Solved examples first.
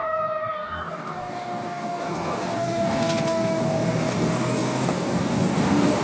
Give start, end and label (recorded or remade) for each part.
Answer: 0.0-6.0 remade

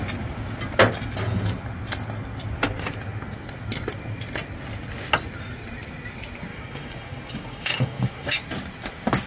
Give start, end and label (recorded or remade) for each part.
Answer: 0.0-6.5 recorded; 6.5-8.4 remade; 8.4-9.3 recorded

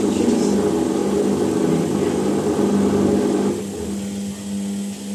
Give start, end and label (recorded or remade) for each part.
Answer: 0.0-5.1 recorded

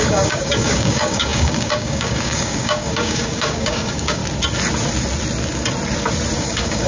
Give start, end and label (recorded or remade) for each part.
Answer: 0.0-4.2 remade; 4.2-6.4 recorded; 6.4-6.9 remade

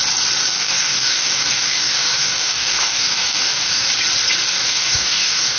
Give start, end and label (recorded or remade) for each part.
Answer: 0.0-0.5 recorded; 0.5-3.9 remade; 3.9-4.5 recorded; 4.5-5.6 remade

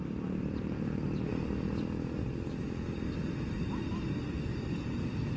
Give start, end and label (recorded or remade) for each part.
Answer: 0.0-5.4 recorded